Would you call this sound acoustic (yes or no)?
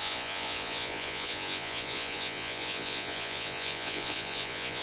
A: no